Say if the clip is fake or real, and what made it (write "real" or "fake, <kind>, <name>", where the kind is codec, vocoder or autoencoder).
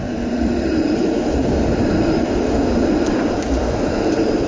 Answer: fake, vocoder, BigVGAN v2